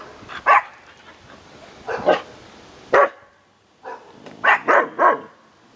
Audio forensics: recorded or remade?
recorded